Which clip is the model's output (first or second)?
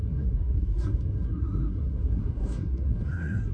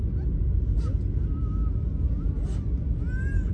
first